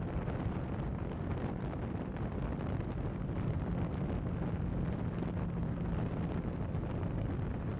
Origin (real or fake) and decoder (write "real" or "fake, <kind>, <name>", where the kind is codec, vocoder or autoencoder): fake, vocoder, BigVGAN v2